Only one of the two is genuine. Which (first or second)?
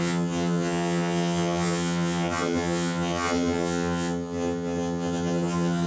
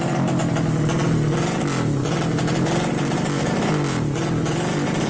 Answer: second